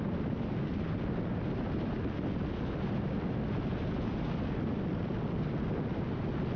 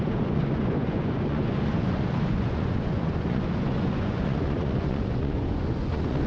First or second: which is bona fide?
first